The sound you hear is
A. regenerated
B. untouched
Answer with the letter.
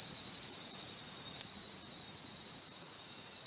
A